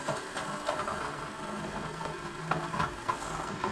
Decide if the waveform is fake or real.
fake